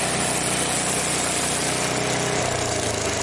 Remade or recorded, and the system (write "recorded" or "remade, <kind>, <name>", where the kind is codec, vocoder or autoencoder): recorded